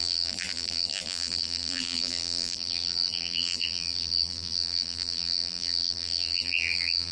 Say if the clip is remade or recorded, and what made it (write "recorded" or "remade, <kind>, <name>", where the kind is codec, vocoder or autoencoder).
remade, vocoder, BigVGAN v2